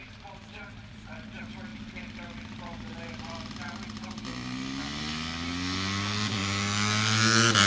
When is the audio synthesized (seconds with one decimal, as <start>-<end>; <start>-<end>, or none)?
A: none

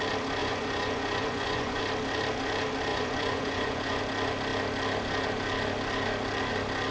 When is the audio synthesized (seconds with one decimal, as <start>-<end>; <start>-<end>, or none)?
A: 0.4-1.8; 2.9-4.0

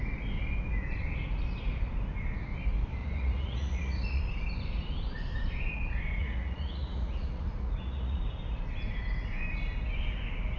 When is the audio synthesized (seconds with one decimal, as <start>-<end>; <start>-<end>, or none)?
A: 3.0-4.2; 6.2-8.2

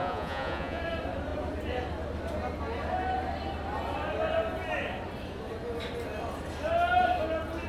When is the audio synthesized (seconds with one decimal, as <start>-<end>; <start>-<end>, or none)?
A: 0.0-0.8

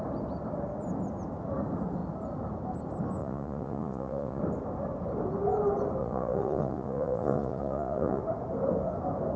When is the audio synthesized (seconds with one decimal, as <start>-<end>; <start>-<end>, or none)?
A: 3.2-4.4; 6.0-8.2

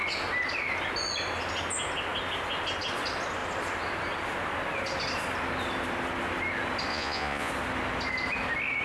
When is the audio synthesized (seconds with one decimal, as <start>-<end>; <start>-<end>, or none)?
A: 6.9-7.5

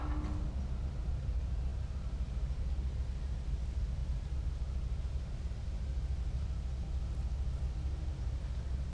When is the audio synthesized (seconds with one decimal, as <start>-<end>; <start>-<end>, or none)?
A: none

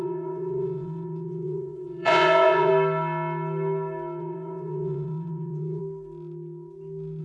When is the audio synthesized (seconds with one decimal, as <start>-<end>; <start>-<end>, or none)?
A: 0.0-2.7; 4.2-5.8